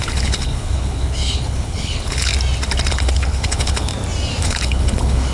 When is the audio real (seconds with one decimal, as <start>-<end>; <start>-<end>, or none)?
2.3-2.9; 3.9-4.4